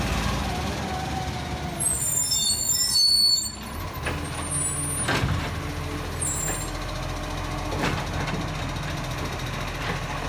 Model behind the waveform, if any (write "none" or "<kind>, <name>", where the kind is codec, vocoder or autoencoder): none